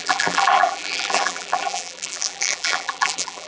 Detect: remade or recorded remade